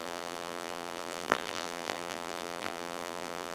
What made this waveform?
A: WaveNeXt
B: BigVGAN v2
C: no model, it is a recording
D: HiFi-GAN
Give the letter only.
B